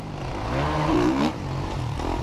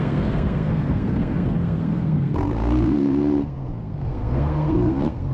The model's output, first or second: second